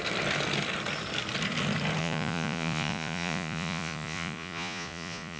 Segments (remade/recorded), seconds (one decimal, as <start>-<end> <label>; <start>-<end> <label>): 0.0-2.0 recorded; 2.0-5.4 remade